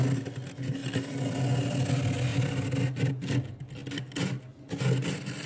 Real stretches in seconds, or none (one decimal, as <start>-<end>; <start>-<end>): 0.0-5.5